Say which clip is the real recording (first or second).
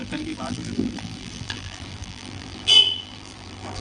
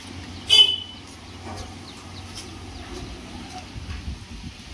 second